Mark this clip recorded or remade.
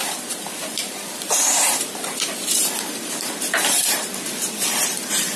remade